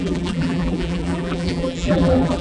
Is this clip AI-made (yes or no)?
yes